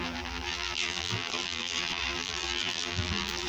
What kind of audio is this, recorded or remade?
remade